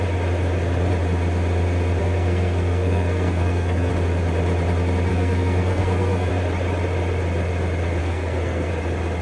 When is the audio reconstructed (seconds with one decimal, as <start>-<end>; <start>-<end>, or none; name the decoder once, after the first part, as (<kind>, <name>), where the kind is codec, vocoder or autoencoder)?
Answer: 2.0-3.9 (codec, SNAC); 5.1-6.3; 8.0-8.7